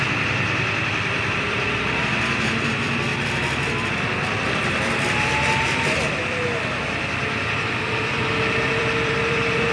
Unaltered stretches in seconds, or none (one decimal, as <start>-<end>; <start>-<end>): 3.1-3.9